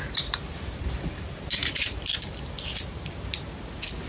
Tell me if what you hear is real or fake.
real